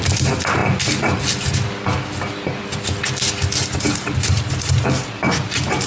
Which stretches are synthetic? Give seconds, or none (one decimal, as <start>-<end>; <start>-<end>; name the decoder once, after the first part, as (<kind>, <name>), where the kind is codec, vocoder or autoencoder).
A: none